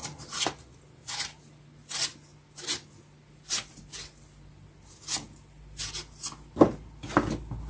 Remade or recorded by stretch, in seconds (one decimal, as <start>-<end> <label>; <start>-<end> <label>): 0.0-7.7 recorded